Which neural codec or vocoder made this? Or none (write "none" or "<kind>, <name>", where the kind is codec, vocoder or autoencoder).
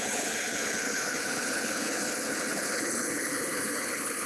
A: codec, HILCodec